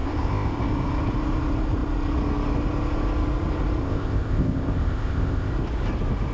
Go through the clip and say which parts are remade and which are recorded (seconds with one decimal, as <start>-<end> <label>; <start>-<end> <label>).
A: 0.0-0.6 remade; 0.6-3.8 recorded; 3.8-5.5 remade; 5.5-6.3 recorded